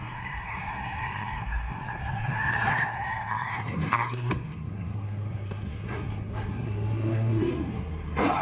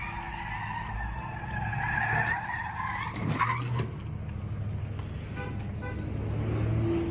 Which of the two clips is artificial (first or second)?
first